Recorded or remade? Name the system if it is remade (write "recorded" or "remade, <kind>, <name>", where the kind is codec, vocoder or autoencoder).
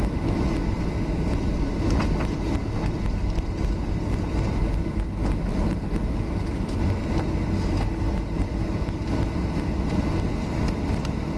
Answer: recorded